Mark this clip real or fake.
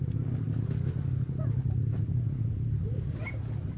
real